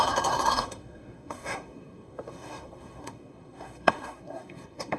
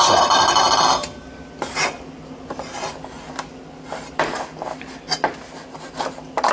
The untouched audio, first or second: second